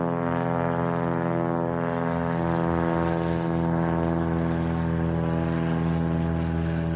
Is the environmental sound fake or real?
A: real